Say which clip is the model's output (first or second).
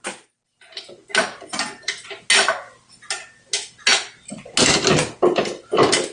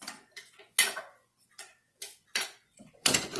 second